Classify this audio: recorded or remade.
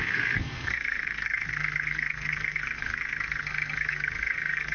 remade